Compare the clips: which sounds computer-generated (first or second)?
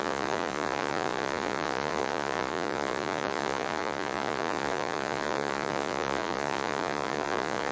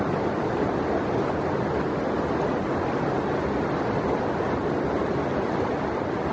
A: first